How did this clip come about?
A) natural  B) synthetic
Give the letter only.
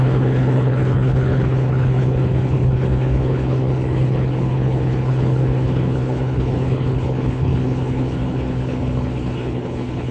B